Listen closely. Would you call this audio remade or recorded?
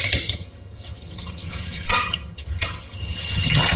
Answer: remade